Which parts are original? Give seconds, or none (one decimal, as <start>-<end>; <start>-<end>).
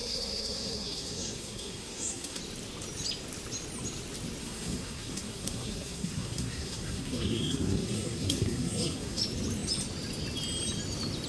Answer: 2.4-4.4; 9.2-11.3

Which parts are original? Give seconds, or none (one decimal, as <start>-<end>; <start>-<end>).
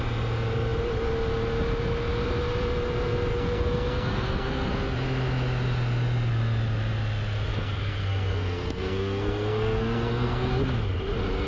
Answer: 0.0-3.3; 4.7-7.5; 10.5-11.5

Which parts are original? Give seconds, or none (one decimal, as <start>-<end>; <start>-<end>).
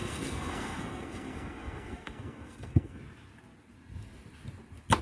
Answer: 3.0-5.0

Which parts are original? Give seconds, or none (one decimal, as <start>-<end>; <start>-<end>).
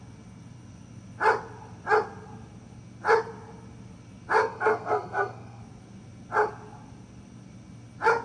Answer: 0.0-4.4; 5.6-8.2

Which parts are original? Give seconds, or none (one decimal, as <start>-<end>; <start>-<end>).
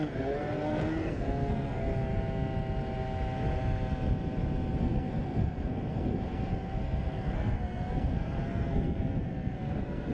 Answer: 2.1-4.8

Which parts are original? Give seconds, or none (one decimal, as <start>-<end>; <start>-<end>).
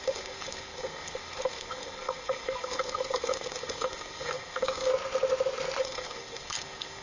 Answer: 4.9-5.8